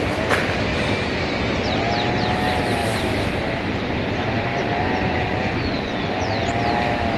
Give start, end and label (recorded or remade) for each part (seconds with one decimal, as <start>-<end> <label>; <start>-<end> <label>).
0.0-4.5 recorded; 4.5-6.5 remade; 6.5-7.2 recorded